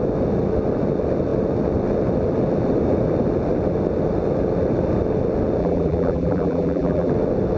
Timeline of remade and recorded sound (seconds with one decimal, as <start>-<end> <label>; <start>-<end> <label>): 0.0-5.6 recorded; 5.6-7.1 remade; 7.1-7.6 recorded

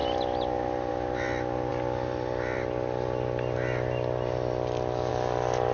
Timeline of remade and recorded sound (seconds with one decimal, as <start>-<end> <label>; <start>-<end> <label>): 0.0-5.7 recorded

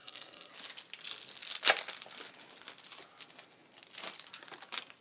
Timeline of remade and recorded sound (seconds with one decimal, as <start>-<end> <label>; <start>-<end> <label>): 0.0-0.5 remade; 0.5-5.0 recorded

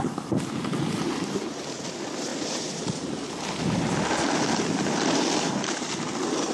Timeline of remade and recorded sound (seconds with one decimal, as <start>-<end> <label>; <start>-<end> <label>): 0.0-2.3 recorded; 2.3-3.1 remade; 3.1-6.5 recorded

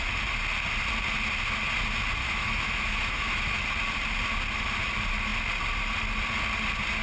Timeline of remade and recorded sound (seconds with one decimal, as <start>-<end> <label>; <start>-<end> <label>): 0.0-2.2 recorded; 2.2-3.6 remade; 3.6-7.0 recorded

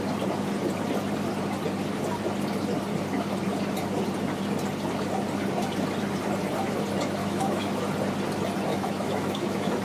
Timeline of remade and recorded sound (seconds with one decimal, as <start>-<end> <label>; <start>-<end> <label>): 0.0-7.2 recorded; 7.2-7.8 remade; 7.8-8.7 recorded; 8.7-9.8 remade

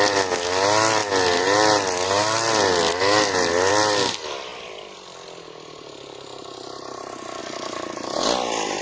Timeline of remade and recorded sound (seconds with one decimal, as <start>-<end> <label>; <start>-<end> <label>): 0.0-8.8 recorded

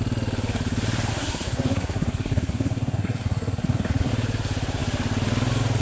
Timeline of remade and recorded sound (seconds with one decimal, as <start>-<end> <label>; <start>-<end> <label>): 0.0-1.1 recorded; 1.1-4.1 remade; 4.1-5.8 recorded